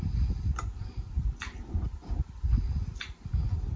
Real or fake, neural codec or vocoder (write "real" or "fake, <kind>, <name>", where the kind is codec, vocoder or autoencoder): real